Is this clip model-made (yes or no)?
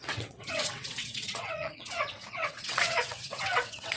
yes